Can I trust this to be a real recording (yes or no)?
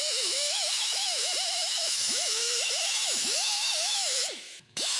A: no